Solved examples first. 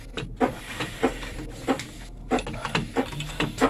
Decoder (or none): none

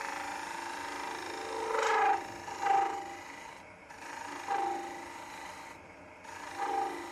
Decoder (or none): none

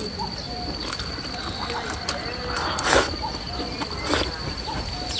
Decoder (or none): none